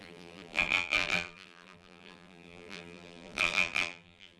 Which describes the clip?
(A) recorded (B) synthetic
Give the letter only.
B